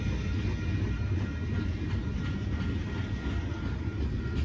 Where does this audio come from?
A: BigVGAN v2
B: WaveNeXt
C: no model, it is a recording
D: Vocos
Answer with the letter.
C